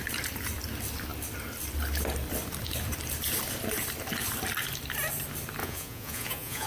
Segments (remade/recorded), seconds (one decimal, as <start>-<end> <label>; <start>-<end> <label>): 0.0-5.6 recorded; 5.6-6.7 remade